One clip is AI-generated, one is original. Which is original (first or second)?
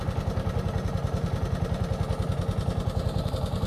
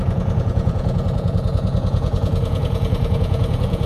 first